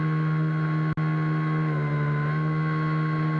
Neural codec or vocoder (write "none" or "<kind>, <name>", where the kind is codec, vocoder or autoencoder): none